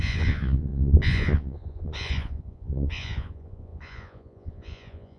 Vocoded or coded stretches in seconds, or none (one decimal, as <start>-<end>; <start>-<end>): 0.0-5.2